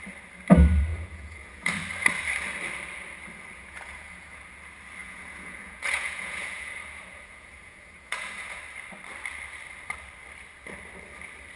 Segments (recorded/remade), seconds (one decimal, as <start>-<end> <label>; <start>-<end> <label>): 0.0-0.9 recorded; 0.9-1.7 remade; 1.7-3.5 recorded; 3.5-4.4 remade; 4.4-5.0 recorded; 5.0-8.6 remade; 8.6-11.6 recorded